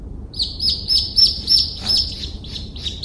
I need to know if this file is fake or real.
fake